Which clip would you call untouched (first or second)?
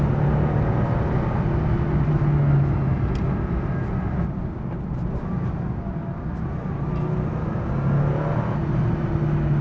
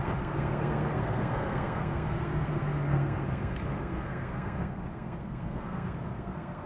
first